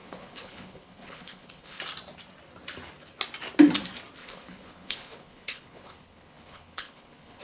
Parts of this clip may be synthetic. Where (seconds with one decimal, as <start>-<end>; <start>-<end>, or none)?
0.0-1.8; 4.2-7.4

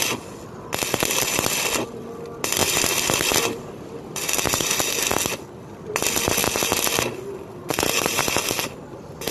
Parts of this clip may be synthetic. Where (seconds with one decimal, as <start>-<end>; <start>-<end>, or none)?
2.6-4.8

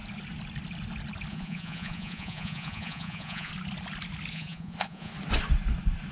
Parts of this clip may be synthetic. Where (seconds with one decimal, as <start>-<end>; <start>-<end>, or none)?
1.3-3.5; 4.3-5.1